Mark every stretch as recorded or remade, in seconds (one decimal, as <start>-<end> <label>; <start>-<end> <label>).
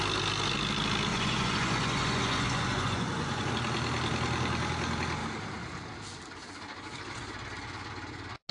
0.0-1.1 recorded; 1.1-3.5 remade; 3.5-8.5 recorded